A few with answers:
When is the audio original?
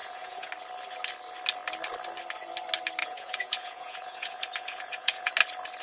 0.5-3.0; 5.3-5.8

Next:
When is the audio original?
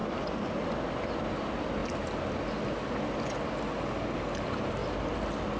0.0-5.6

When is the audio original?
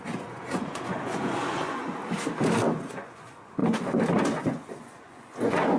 2.0-2.7; 3.6-4.2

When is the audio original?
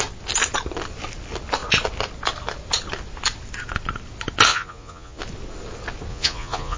0.0-4.5; 5.2-6.1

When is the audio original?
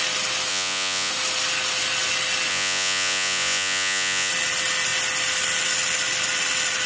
0.0-0.5; 1.1-2.5; 4.3-6.9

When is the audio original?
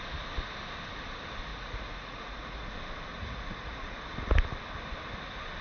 0.0-1.5; 2.7-3.1; 4.1-5.6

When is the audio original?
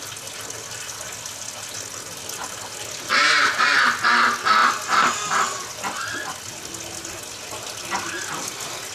0.0-8.9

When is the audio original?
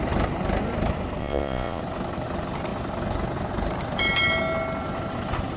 0.0-1.2; 1.8-5.6